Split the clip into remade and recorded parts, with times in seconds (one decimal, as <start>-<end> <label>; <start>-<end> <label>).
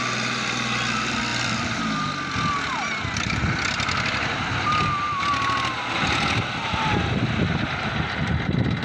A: 0.0-1.3 recorded; 1.3-1.8 remade; 1.8-8.8 recorded